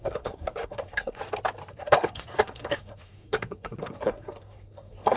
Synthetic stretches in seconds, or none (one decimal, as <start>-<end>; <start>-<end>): 0.0-1.2; 1.7-5.2

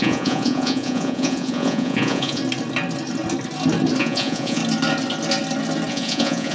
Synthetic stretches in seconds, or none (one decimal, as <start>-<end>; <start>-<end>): 0.0-2.4; 4.0-4.6; 5.9-6.5

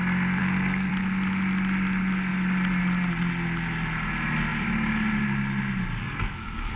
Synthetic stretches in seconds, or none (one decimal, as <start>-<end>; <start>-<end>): 0.4-0.9; 6.0-6.8